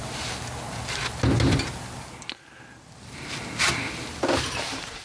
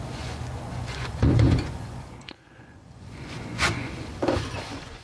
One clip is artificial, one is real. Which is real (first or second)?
first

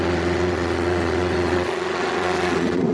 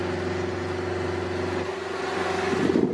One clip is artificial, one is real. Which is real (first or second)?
second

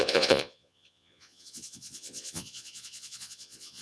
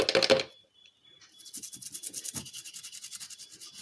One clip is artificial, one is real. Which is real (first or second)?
second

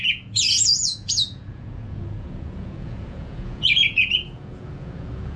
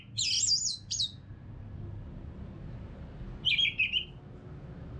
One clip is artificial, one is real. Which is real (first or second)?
second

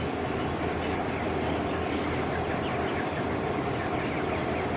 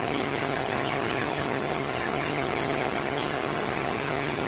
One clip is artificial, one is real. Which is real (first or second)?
first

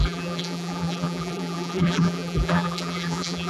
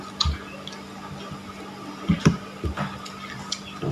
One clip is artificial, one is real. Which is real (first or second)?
second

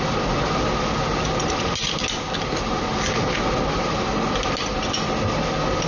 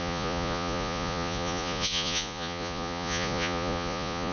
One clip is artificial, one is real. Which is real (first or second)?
first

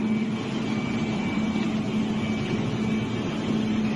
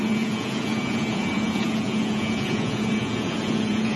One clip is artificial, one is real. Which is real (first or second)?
first